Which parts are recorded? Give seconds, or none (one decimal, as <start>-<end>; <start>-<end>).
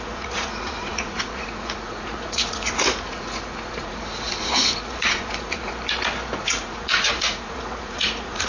5.7-6.4